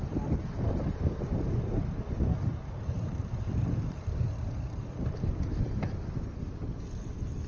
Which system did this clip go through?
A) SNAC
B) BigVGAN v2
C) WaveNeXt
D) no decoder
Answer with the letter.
D